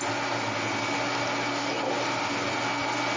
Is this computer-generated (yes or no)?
no